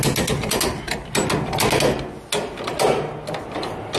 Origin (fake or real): real